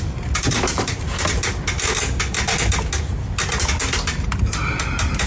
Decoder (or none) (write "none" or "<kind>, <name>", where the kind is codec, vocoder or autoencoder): none